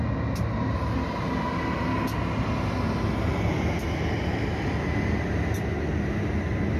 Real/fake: real